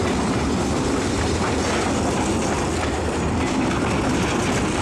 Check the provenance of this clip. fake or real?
real